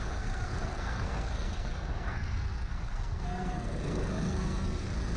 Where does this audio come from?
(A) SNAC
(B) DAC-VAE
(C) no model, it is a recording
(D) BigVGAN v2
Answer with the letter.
A